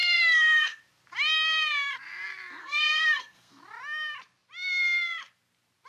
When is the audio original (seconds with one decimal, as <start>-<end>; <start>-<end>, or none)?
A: 0.8-2.6; 3.6-5.9